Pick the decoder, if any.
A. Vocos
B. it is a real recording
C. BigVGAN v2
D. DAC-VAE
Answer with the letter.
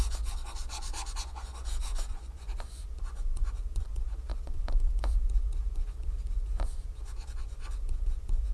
A